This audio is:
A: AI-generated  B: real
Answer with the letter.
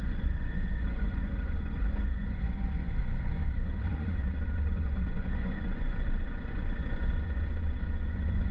A